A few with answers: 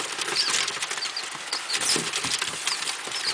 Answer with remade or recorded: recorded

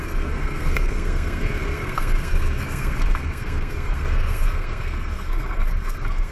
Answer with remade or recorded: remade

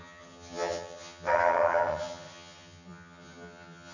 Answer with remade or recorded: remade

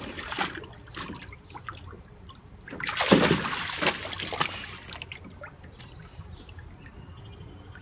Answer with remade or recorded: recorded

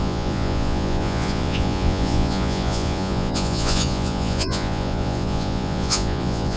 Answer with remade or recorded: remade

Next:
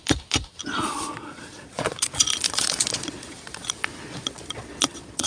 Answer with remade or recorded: remade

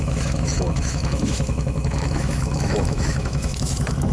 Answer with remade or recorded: remade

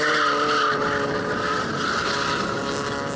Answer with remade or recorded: recorded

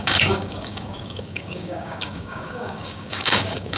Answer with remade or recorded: remade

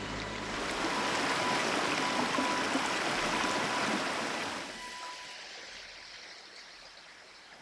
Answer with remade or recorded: recorded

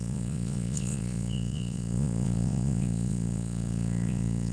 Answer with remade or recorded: remade